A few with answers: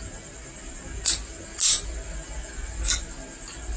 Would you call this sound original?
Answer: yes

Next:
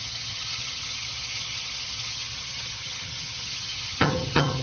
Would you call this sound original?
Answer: no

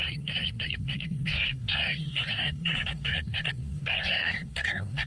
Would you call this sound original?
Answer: no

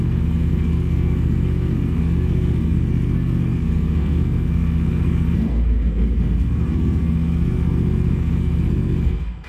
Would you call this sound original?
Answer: no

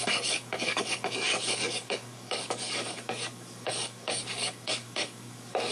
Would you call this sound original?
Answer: no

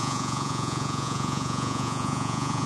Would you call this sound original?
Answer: no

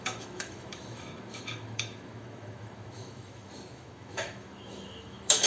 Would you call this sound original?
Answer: no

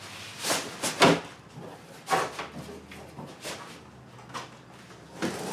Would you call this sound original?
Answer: yes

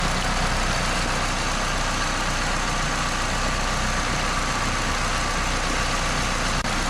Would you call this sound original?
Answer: yes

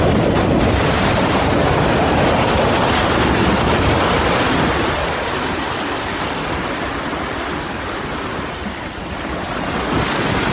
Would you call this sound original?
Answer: yes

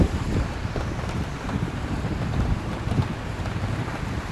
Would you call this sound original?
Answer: no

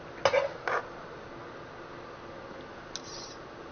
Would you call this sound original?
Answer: yes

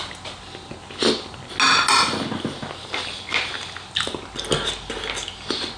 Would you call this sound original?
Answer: yes